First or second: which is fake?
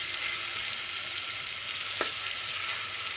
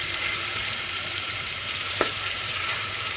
second